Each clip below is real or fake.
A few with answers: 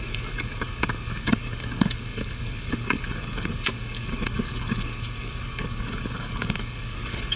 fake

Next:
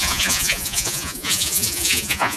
fake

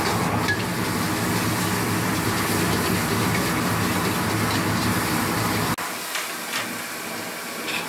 real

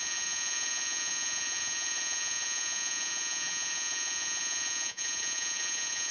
fake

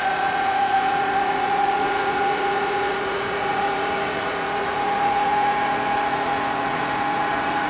fake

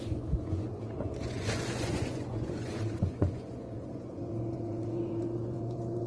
fake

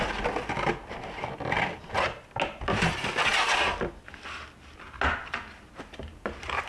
real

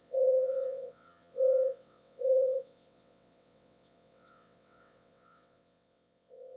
fake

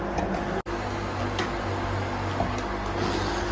real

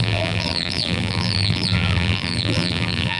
fake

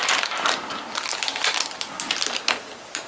real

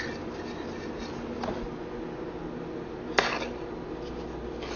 real